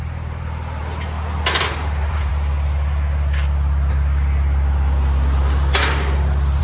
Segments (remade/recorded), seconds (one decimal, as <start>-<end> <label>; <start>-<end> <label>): 0.0-0.8 remade; 0.8-1.6 recorded; 1.6-2.3 remade; 2.3-6.6 recorded